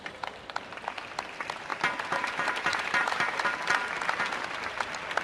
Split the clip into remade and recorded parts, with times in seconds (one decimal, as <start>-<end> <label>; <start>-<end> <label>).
0.0-1.7 recorded; 1.7-3.4 remade; 3.4-5.2 recorded